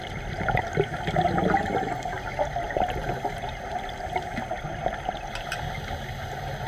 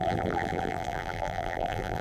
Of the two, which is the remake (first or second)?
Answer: second